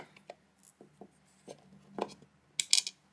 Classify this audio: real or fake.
real